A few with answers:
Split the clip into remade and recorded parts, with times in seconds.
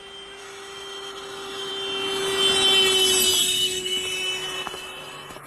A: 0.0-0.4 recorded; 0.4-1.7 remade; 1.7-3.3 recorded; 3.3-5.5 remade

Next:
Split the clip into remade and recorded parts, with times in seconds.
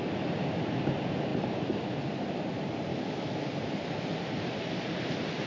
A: 0.0-2.9 recorded; 2.9-3.5 remade; 3.5-5.5 recorded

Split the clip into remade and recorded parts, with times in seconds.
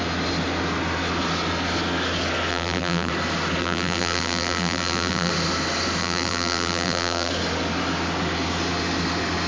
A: 0.0-2.5 recorded; 2.5-3.1 remade; 3.1-3.6 recorded; 3.6-5.3 remade; 5.3-6.0 recorded; 6.0-7.3 remade; 7.3-9.5 recorded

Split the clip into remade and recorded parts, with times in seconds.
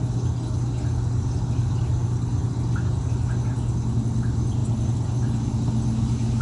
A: 0.0-6.4 recorded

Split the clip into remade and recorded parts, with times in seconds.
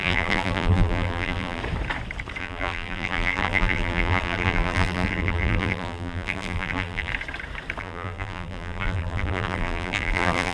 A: 0.0-1.6 remade; 1.6-2.4 recorded; 2.4-7.1 remade; 7.1-7.8 recorded; 7.8-10.5 remade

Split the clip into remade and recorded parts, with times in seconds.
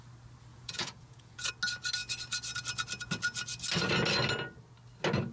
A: 0.0-0.5 recorded; 0.5-1.5 remade; 1.5-5.3 recorded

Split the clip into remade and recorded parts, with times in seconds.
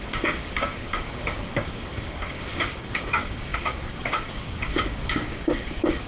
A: 0.0-6.1 remade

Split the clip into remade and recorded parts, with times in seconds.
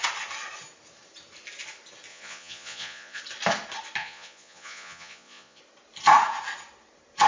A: 0.0-2.1 recorded; 2.1-3.2 remade; 3.2-4.0 recorded; 4.0-5.6 remade; 5.6-7.3 recorded